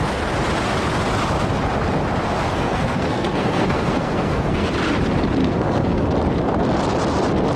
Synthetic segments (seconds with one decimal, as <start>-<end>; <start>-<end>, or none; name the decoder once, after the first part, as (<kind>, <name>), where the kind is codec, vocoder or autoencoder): 2.5-4.7 (codec, SNAC); 5.4-6.0